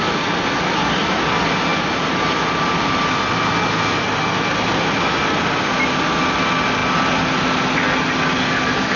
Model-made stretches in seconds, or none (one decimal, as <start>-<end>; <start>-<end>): none